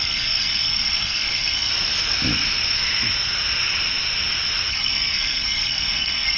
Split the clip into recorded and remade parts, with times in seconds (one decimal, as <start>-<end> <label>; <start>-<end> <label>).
0.0-1.7 remade; 1.7-4.7 recorded; 4.7-6.4 remade